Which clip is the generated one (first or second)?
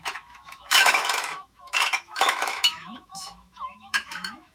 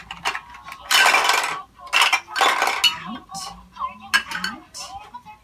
first